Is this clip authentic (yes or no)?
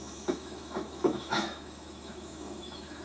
no